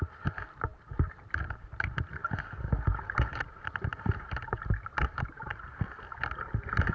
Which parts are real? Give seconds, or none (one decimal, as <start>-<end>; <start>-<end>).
2.2-3.3; 5.7-6.9